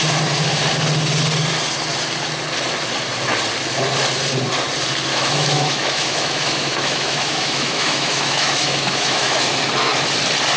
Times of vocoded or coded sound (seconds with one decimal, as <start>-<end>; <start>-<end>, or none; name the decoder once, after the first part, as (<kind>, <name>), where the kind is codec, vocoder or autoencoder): 5.1-9.4 (autoencoder, DAC-VAE)